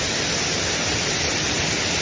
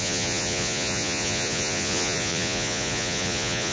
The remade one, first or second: second